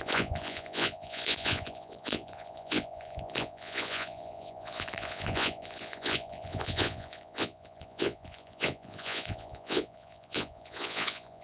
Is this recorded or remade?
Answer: remade